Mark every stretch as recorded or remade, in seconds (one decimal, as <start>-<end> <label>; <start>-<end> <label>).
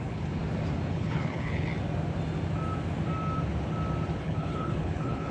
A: 0.0-0.4 remade; 0.4-0.9 recorded; 0.9-1.7 remade; 1.7-4.2 recorded; 4.2-5.3 remade